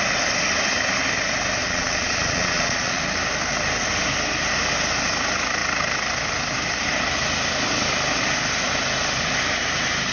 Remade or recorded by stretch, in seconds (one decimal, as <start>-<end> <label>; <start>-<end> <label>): 0.0-1.6 recorded; 1.6-3.0 remade; 3.0-10.1 recorded